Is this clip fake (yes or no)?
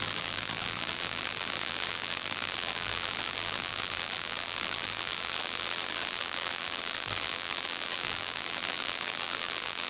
yes